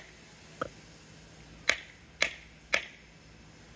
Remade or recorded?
recorded